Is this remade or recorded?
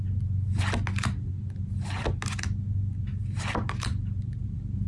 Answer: recorded